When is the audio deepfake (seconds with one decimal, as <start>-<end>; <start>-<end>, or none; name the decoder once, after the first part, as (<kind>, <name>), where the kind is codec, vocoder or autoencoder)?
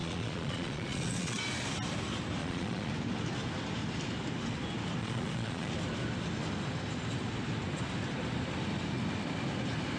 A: 0.0-1.4 (vocoder, Vocos); 2.4-2.9; 5.0-5.7